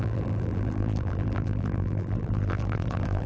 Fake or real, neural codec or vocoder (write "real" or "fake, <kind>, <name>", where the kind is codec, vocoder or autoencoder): fake, vocoder, BigVGAN v2